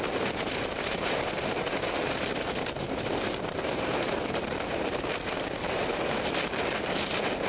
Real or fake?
fake